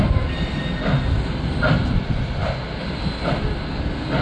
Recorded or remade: recorded